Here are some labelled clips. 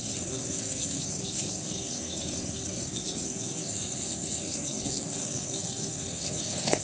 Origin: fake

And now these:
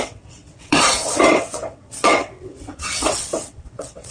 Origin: fake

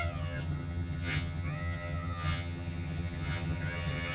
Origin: fake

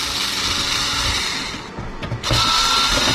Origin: real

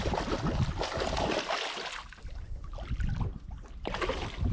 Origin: real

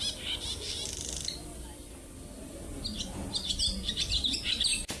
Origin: real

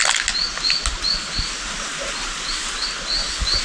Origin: real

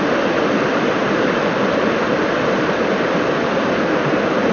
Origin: real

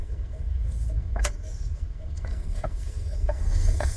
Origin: fake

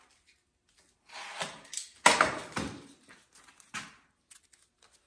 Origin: real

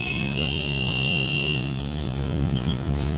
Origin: fake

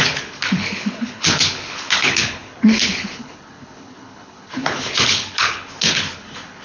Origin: fake